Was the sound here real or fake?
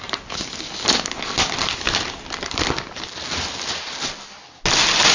real